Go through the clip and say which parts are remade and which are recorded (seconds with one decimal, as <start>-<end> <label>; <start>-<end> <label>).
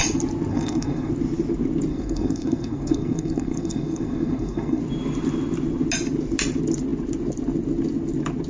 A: 0.0-0.5 recorded; 0.5-1.1 remade; 1.1-1.9 recorded; 1.9-4.8 remade; 4.8-8.5 recorded